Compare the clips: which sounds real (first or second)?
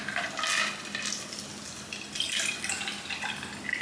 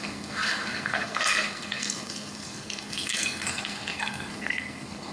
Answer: first